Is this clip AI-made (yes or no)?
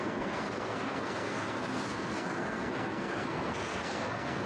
yes